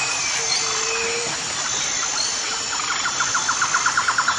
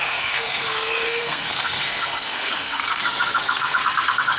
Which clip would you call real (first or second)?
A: first